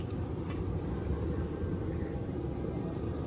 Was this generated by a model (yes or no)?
yes